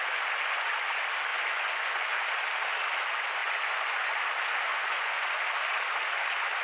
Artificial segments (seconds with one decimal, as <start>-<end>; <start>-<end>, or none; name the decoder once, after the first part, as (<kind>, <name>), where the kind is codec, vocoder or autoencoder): 1.3-2.3 (vocoder, Vocos); 3.4-4.2; 4.7-5.4